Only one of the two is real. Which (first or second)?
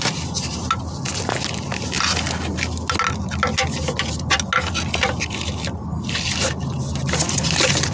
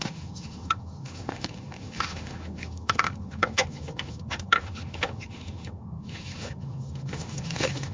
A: first